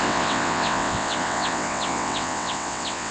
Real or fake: fake